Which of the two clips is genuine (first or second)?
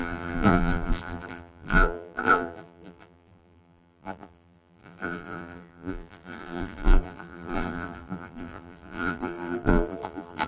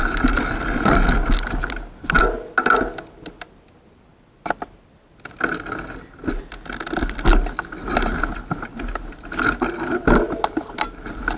second